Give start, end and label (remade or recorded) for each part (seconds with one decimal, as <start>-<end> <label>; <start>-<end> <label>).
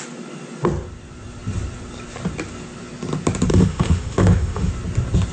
0.0-3.5 recorded; 3.5-4.7 remade; 4.7-5.3 recorded